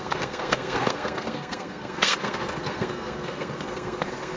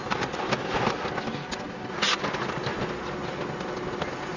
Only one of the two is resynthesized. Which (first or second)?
first